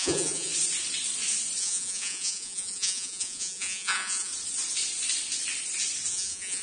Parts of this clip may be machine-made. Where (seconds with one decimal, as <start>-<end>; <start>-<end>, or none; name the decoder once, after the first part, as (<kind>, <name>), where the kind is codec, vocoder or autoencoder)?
0.0-0.5 (vocoder, Vocos); 1.6-4.3; 6.1-6.6